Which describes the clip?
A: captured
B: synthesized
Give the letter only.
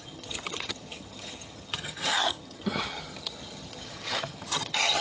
B